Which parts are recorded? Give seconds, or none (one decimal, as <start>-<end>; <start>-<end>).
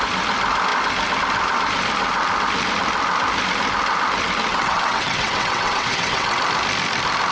0.0-4.5; 6.4-7.3